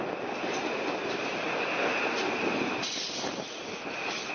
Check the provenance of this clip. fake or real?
real